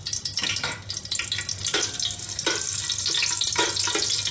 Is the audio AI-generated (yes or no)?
no